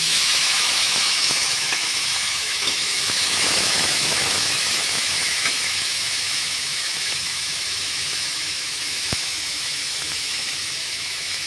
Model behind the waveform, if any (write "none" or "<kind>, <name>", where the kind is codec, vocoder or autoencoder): autoencoder, DAC-VAE